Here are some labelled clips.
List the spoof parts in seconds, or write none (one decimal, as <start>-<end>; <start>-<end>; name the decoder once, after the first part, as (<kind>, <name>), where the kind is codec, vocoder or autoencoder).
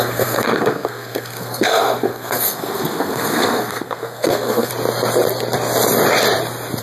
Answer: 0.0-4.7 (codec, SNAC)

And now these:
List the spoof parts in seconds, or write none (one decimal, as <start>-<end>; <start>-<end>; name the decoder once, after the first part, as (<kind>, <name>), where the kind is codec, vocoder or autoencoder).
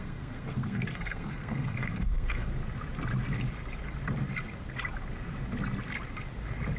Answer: 0.0-2.5 (codec, SNAC)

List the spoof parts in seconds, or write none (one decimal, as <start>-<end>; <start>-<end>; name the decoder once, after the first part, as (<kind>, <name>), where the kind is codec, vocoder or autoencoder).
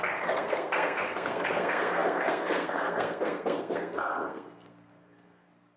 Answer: 0.0-5.8 (codec, SNAC)